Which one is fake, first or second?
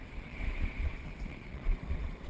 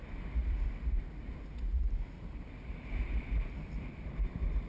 first